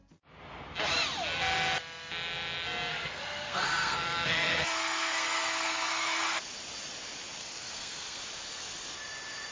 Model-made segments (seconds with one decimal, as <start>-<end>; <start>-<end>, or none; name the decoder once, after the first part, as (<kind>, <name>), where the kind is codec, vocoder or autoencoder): 2.9-6.4 (codec, SNAC); 7.4-8.2